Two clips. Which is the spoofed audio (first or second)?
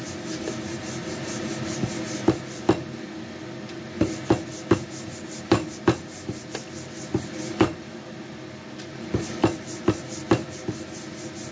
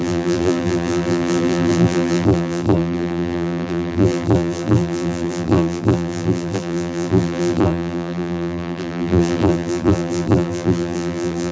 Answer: second